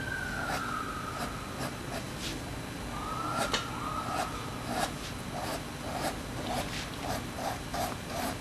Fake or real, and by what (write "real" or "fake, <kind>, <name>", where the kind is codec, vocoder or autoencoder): real